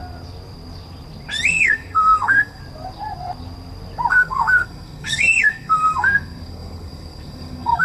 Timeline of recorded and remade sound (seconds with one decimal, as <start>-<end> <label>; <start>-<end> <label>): 0.0-1.5 recorded; 1.5-2.6 remade; 2.6-4.1 recorded; 4.1-7.8 remade